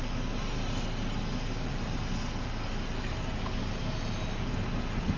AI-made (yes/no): no